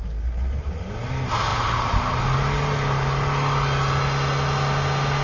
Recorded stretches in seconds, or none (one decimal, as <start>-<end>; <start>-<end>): 0.0-5.2